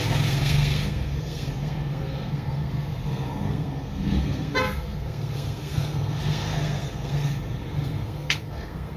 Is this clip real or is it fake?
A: fake